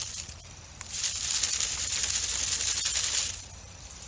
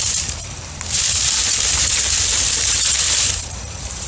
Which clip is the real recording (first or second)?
first